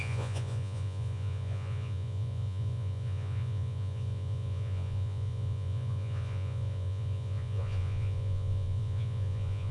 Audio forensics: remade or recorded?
remade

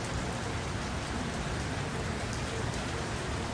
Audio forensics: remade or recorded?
recorded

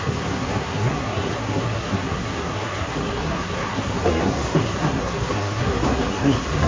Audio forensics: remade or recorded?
remade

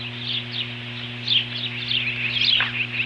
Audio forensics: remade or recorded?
recorded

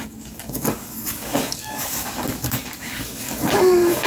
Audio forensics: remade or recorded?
remade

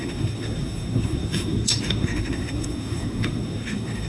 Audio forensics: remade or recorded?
remade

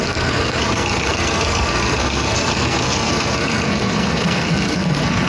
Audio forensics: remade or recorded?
remade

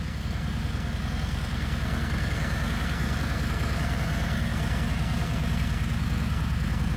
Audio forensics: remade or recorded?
remade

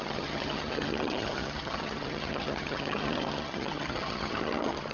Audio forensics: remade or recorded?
remade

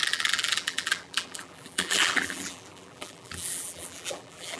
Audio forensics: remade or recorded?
remade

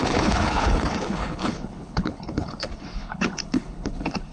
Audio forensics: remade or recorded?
remade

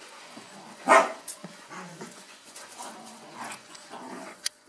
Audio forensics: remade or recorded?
remade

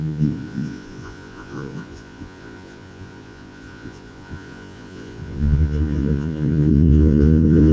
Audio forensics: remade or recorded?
remade